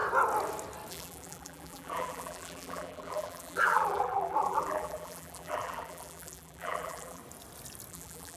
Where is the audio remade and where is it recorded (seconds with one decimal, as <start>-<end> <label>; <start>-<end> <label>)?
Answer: 0.0-0.9 recorded; 0.9-7.2 remade; 7.2-7.9 recorded; 7.9-8.4 remade